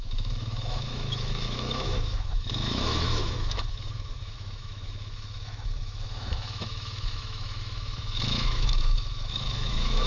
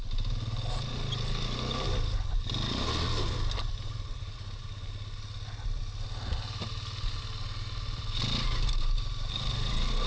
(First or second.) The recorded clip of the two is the second